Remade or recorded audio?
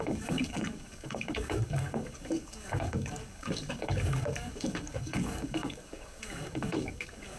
remade